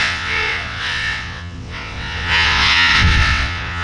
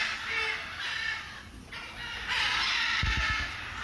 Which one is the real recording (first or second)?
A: second